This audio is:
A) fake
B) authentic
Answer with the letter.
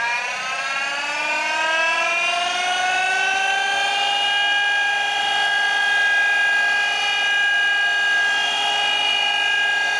B